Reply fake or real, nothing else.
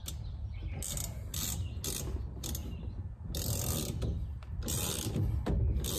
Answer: real